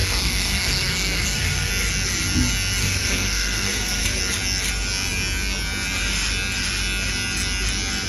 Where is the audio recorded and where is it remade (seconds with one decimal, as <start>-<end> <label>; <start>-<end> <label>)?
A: 0.0-1.7 remade; 1.7-2.8 recorded; 2.8-4.2 remade; 4.2-8.1 recorded

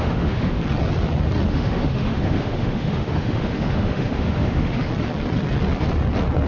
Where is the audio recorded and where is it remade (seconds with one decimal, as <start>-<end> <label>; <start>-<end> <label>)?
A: 0.0-0.6 remade; 0.6-1.5 recorded; 1.5-4.9 remade; 4.9-6.5 recorded